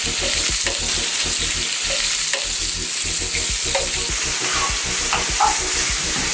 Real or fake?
real